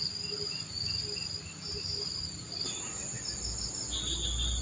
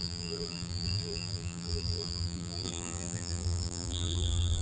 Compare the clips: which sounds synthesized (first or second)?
second